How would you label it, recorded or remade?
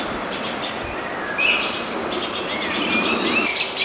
recorded